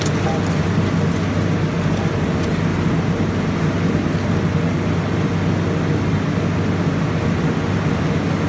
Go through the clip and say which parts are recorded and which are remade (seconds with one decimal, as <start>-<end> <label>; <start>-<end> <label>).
0.0-2.7 recorded; 2.7-3.3 remade; 3.3-8.5 recorded